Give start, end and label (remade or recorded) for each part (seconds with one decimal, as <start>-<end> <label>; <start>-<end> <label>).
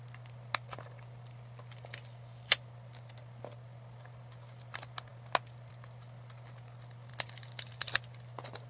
0.0-8.7 recorded